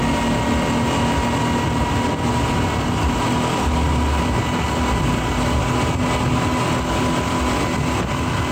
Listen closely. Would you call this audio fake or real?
real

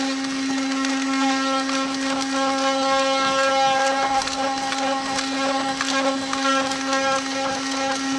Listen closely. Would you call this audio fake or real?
real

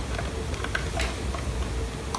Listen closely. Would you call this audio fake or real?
real